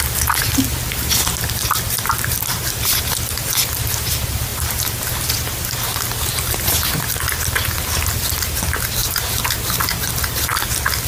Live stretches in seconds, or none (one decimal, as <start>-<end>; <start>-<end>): 0.0-4.5; 5.0-9.0; 9.8-11.1